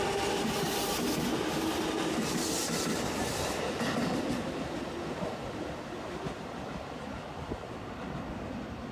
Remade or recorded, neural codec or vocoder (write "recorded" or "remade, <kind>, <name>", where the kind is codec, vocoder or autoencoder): recorded